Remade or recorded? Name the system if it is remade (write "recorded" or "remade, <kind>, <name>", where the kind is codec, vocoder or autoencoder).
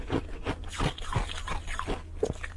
recorded